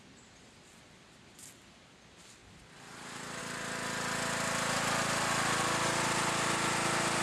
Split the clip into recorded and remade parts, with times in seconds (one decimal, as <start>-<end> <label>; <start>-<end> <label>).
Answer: 0.0-7.2 recorded